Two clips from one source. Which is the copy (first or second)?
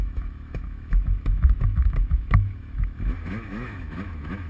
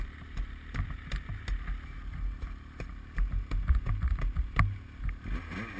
first